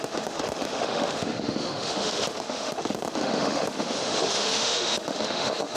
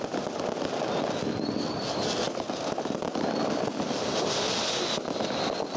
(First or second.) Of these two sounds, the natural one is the second